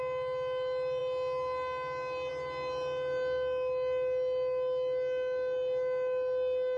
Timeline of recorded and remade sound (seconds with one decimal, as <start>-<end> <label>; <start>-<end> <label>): 0.0-6.8 recorded

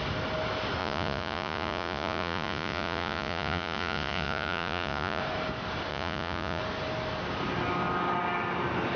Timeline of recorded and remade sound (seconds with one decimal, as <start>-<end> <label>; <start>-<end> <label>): 0.0-0.8 recorded; 0.8-5.2 remade; 5.2-5.9 recorded; 5.9-6.6 remade; 6.6-9.0 recorded